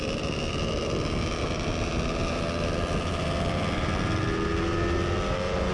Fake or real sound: real